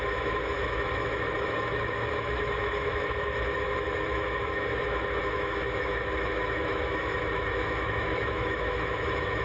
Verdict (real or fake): fake